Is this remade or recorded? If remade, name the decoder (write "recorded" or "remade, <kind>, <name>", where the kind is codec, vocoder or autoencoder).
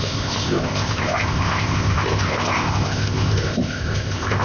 remade, codec, ZipCodec